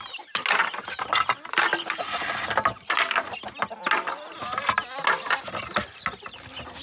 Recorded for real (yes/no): yes